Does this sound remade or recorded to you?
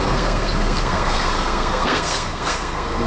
remade